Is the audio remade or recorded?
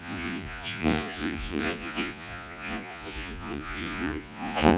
remade